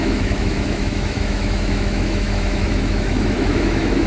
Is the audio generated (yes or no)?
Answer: yes